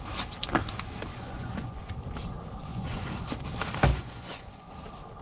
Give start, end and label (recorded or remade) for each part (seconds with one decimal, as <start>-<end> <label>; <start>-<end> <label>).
0.0-1.1 recorded; 1.1-1.8 remade; 1.8-2.7 recorded; 2.7-3.2 remade; 3.2-3.9 recorded; 3.9-4.7 remade; 4.7-5.2 recorded